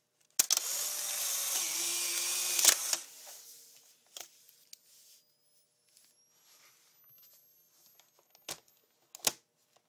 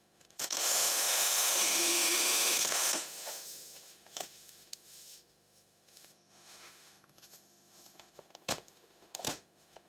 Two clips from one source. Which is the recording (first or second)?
first